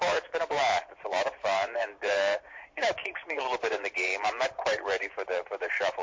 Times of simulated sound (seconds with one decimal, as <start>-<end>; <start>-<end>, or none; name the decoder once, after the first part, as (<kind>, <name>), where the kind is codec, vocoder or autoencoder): 0.0-6.0 (vocoder, BigVGAN v2)